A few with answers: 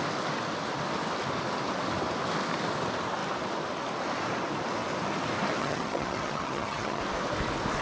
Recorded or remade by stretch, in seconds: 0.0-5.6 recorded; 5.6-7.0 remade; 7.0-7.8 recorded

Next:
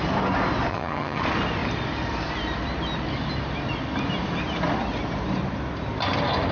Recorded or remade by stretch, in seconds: 0.0-0.7 recorded; 0.7-1.2 remade; 1.2-6.5 recorded